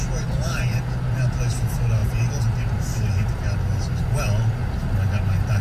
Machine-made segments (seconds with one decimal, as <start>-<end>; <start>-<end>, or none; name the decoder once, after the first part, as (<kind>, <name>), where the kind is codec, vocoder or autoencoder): none